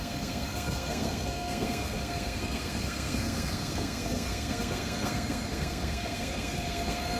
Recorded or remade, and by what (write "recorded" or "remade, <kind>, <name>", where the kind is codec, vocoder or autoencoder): remade, codec, SNAC